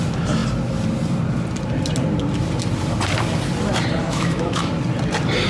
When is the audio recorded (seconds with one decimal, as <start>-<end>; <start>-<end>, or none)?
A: 0.0-4.0; 4.7-5.5